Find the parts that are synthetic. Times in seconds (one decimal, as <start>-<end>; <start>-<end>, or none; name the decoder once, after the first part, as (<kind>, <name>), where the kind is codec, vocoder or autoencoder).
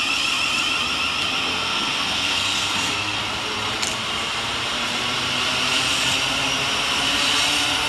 1.5-3.2 (codec, SNAC)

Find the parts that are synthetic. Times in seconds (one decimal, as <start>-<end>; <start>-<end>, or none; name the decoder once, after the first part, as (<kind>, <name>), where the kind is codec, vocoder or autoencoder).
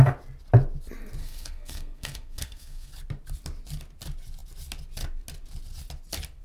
1.2-2.9 (codec, SNAC)